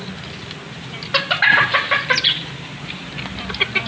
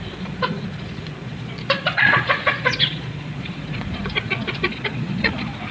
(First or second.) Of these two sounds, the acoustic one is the first